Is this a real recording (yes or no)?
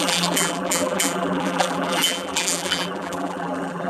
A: no